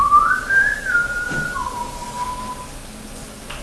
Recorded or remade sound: remade